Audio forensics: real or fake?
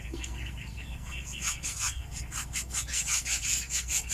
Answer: fake